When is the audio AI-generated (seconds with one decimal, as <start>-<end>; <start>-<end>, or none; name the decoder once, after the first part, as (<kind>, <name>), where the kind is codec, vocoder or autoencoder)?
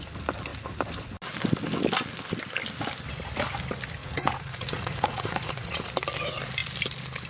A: 4.0-5.9 (vocoder, Vocos)